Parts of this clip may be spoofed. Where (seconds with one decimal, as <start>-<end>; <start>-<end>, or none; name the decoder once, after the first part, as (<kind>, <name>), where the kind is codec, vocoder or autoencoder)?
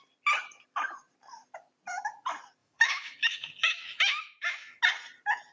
2.6-4.8 (autoencoder, DAC-VAE)